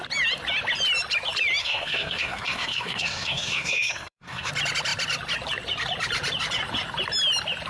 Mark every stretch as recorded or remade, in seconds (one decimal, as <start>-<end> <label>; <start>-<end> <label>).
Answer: 0.0-1.6 recorded; 1.6-4.5 remade; 4.5-7.7 recorded